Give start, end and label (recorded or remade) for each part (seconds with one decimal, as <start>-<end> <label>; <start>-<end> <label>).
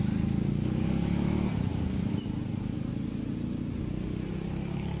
0.0-5.0 recorded